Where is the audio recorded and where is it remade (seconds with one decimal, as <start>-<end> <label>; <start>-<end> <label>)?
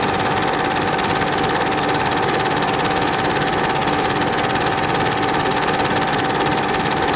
0.0-7.2 recorded